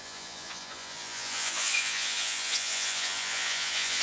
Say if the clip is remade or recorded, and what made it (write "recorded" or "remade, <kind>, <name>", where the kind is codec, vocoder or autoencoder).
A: remade, vocoder, Vocos